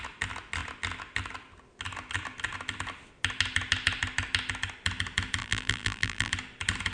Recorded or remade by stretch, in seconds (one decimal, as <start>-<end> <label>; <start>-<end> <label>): 0.0-5.4 recorded; 5.4-6.3 remade; 6.3-6.9 recorded